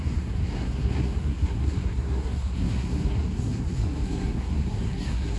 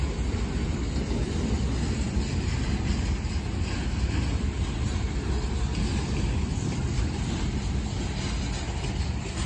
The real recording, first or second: second